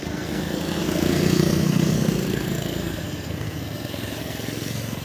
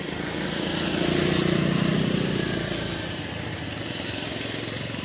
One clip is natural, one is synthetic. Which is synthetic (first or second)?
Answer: first